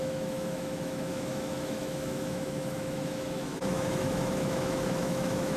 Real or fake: fake